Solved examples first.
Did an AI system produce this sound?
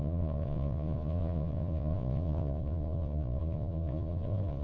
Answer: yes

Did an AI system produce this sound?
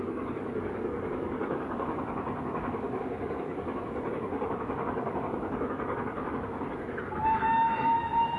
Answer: yes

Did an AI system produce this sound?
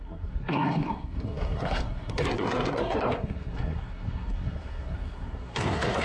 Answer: yes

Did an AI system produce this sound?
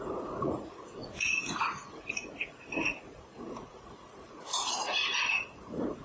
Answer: yes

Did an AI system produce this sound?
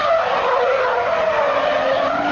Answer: no